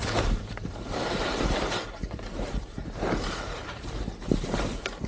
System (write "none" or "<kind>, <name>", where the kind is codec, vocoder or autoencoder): vocoder, BigVGAN v2